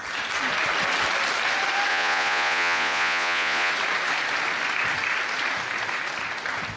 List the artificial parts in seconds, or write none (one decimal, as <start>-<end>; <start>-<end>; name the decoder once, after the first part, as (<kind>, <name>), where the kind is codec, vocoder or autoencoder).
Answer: 1.9-3.7 (vocoder, Vocos)